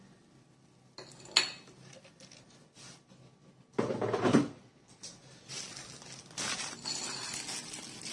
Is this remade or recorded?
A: recorded